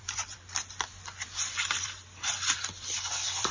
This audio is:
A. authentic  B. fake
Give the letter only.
B